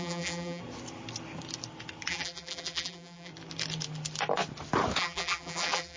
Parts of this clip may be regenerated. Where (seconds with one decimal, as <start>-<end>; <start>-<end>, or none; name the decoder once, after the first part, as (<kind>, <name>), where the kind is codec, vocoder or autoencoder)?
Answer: 0.0-0.6 (vocoder, BigVGAN v2); 2.1-3.3; 5.0-6.0